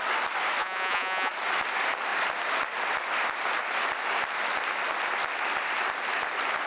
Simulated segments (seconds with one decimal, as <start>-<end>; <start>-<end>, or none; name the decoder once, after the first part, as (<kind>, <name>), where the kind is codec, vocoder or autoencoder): 0.6-1.3 (vocoder, Vocos)